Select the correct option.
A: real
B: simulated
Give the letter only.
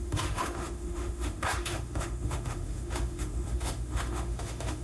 B